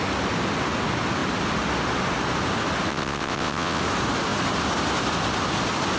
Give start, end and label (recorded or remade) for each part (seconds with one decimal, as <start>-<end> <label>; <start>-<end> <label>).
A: 0.0-2.9 recorded; 2.9-3.8 remade; 3.8-6.0 recorded